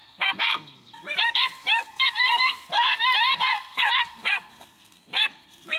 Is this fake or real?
fake